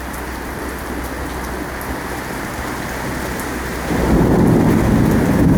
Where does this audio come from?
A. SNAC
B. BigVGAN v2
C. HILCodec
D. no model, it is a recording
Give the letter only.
D